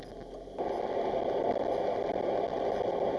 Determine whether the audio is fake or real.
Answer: real